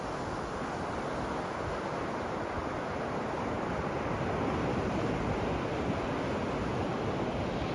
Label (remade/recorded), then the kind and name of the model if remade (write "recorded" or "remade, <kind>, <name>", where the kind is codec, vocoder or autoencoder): recorded